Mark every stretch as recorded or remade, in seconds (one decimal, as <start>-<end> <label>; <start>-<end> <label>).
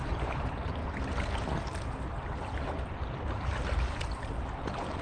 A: 0.0-0.8 remade; 0.8-2.6 recorded; 2.6-5.0 remade